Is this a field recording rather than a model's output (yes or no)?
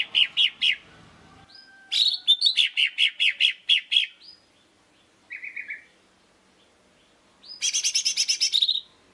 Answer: yes